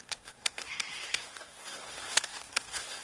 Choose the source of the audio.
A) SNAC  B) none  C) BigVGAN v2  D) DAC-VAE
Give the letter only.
A